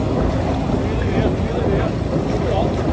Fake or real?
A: real